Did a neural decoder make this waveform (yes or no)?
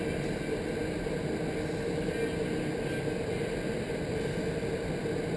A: no